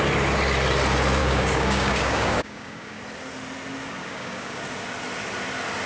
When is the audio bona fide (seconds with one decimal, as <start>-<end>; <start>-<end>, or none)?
0.0-1.2; 3.0-4.0; 4.6-5.9